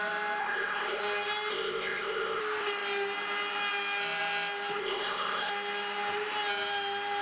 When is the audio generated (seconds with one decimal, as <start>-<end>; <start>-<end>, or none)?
0.4-1.0; 1.5-2.4; 4.8-5.5